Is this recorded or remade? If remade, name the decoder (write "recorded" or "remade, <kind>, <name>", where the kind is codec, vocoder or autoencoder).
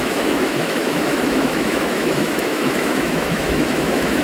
remade, autoencoder, DAC-VAE